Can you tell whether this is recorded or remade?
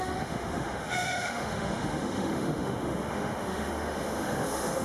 remade